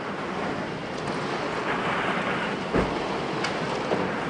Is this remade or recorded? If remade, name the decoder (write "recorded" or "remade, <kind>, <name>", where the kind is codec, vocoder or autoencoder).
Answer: recorded